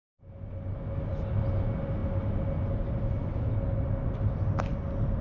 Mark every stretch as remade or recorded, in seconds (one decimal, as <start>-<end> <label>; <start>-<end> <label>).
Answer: 0.0-5.2 recorded